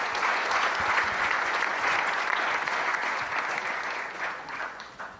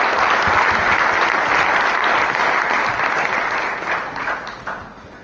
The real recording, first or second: second